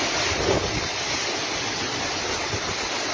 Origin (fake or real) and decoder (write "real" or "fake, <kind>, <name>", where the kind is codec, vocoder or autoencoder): real